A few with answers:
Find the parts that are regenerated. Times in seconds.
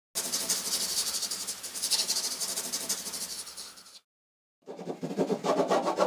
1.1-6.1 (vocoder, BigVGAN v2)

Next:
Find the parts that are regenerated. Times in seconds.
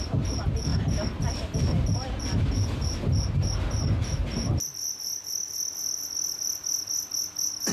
none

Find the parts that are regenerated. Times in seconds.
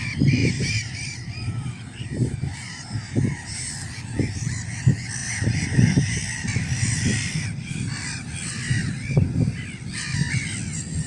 0.4-3.7 (vocoder, BigVGAN v2); 5.2-6.2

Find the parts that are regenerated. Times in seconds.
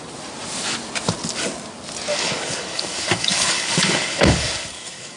2.1-5.2 (codec, DAC)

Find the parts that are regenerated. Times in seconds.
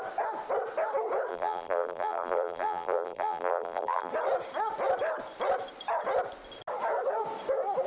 1.3-4.1 (vocoder, BigVGAN v2)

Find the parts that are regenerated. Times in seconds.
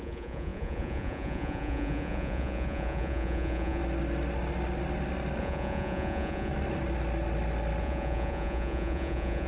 0.0-3.8 (vocoder, Vocos); 5.4-6.5; 7.8-9.5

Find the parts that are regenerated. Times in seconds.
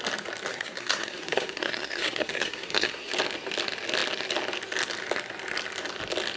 0.5-3.1 (codec, SNAC)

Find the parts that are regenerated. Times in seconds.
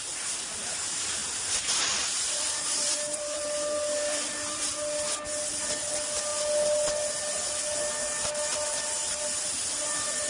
1.2-4.7 (vocoder, BigVGAN v2)